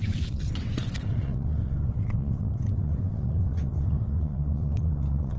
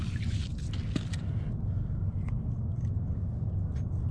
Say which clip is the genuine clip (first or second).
second